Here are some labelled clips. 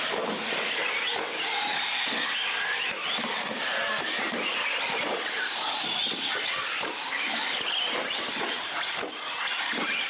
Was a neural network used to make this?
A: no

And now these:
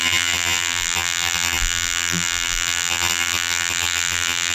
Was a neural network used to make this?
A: yes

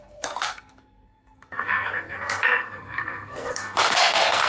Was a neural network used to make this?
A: yes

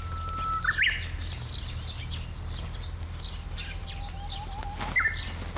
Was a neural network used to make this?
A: no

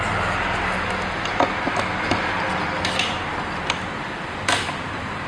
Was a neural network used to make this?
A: no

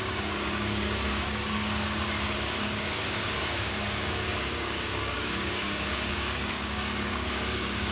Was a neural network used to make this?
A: yes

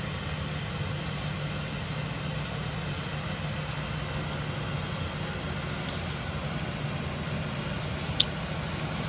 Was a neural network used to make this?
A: no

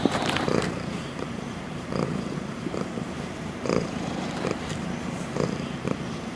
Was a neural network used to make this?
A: yes